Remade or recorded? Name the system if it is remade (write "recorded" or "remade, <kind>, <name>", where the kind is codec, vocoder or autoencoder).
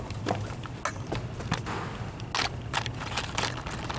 recorded